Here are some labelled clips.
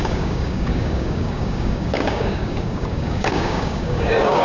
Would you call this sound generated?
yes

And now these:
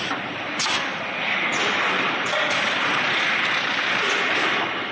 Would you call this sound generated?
no